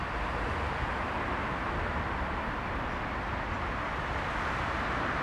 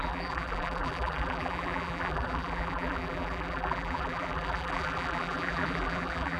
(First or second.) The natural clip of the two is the first